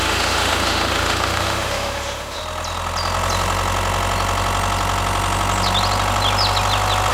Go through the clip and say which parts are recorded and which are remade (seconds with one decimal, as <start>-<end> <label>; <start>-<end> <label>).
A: 0.0-2.4 remade; 2.4-7.1 recorded